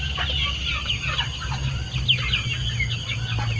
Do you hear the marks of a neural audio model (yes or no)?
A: no